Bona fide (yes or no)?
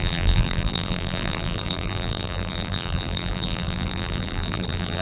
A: no